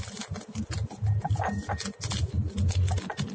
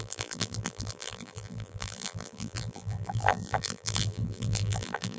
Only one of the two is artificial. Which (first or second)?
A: second